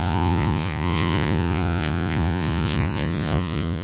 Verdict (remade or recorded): remade